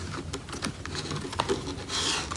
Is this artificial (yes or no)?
no